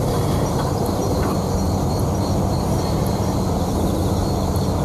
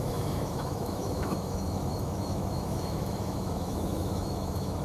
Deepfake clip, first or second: second